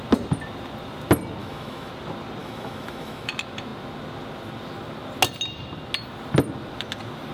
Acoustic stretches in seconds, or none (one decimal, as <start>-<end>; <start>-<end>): 0.0-1.4; 1.9-2.4; 3.3-7.3